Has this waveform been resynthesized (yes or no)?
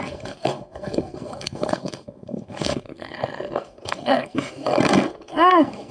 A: yes